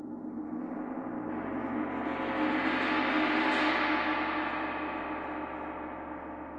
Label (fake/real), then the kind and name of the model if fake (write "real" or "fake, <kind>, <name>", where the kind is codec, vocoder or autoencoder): real